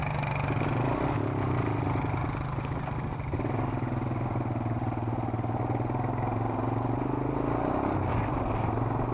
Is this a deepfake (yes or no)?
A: no